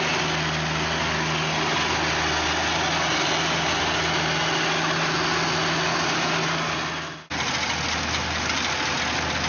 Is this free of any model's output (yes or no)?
yes